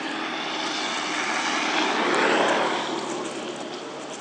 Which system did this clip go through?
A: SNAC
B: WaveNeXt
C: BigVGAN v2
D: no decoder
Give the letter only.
D